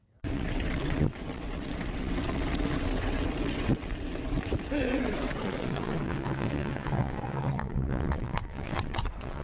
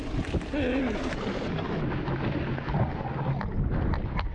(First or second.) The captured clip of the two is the second